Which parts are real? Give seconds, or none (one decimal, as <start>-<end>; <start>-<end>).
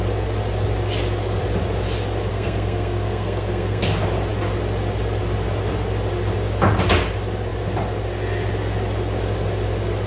0.0-2.3; 3.8-10.1